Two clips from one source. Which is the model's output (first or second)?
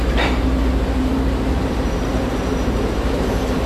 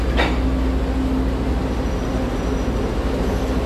first